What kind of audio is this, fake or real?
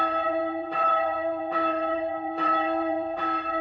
fake